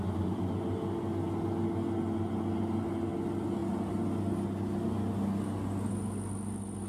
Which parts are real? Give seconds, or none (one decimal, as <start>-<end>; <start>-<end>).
0.0-6.9